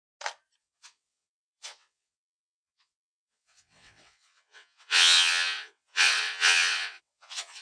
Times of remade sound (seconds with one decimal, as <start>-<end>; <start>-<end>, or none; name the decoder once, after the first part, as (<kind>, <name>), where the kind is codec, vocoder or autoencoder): 0.6-7.6 (vocoder, WaveNeXt)

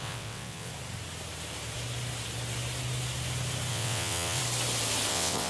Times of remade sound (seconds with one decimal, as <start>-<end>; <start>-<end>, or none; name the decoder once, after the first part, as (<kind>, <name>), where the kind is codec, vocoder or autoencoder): 0.0-0.7 (vocoder, WaveNeXt); 3.7-4.4; 5.1-5.5